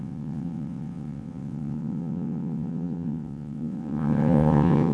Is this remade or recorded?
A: remade